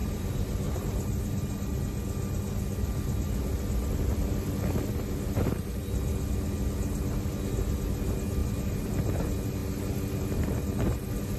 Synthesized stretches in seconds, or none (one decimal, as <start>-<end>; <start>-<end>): 0.0-1.8; 8.4-8.9